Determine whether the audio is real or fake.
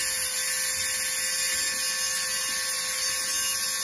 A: real